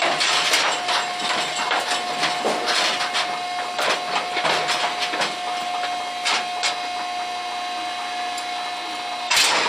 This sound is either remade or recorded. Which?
recorded